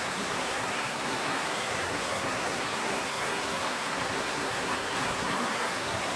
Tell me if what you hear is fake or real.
fake